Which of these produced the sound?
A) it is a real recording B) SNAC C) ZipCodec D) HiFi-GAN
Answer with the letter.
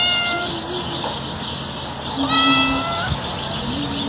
A